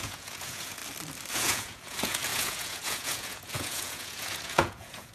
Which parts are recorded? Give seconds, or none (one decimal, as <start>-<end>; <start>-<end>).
0.8-1.3